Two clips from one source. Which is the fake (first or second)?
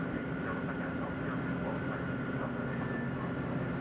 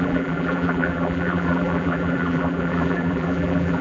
second